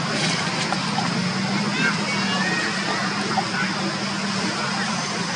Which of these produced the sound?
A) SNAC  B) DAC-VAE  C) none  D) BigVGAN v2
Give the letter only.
C